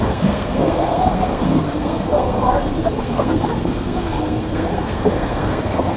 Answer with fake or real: fake